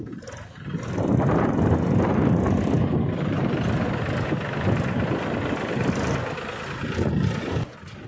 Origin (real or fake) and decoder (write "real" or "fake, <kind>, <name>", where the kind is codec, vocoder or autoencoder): real